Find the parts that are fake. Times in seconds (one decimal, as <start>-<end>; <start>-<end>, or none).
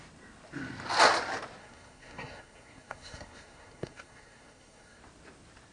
1.6-5.0